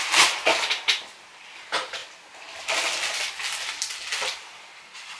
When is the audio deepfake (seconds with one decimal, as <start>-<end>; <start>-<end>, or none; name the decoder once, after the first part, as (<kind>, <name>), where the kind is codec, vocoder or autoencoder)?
none

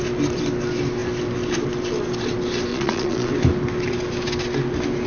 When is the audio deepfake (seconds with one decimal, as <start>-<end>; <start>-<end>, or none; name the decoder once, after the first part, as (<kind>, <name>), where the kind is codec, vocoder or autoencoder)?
2.7-3.3 (vocoder, Vocos)

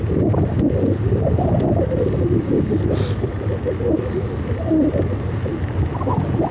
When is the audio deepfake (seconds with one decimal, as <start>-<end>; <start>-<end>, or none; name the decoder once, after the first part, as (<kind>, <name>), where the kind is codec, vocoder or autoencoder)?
none

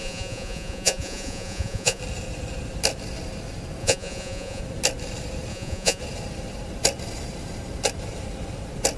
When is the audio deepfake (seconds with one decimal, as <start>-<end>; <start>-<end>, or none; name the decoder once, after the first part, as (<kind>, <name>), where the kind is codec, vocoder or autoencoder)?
0.0-2.0 (vocoder, Vocos); 3.8-4.6; 5.5-6.0

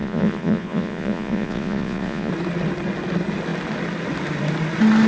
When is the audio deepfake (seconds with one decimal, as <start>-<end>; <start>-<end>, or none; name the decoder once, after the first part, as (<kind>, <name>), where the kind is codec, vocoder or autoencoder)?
0.0-2.3 (vocoder, Vocos)

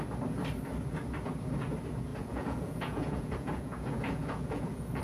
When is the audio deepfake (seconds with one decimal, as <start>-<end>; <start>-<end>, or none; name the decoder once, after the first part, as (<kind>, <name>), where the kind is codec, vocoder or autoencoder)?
2.1-5.0 (vocoder, Vocos)

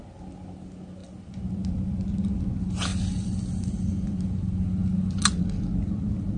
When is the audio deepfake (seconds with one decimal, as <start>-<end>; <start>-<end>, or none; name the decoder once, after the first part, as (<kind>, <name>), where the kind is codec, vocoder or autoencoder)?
none